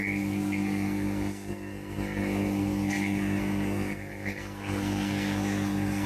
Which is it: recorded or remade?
remade